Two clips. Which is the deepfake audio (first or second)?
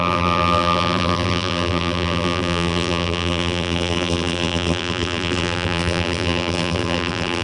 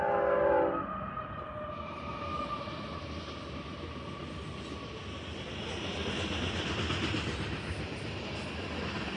first